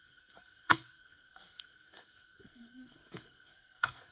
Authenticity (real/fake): fake